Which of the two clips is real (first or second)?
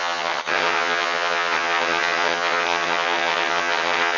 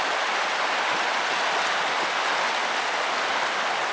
second